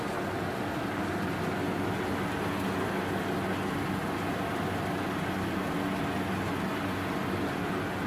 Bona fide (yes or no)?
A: yes